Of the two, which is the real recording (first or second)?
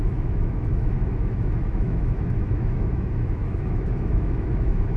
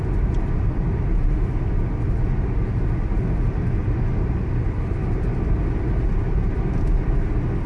second